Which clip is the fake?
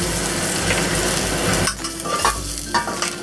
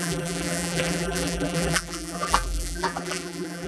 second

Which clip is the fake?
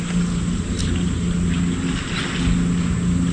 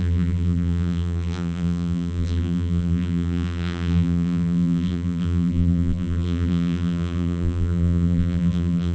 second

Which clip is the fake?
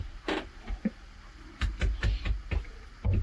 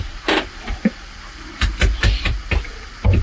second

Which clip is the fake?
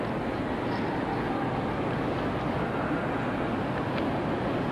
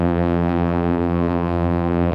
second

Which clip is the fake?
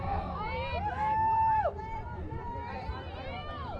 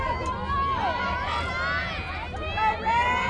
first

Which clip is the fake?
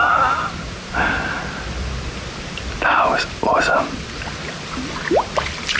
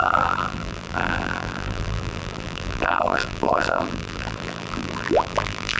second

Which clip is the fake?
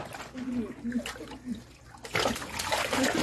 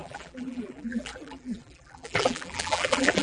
second